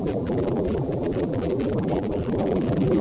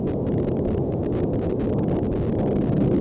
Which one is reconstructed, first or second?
first